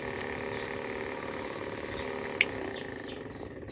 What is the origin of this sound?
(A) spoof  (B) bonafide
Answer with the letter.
B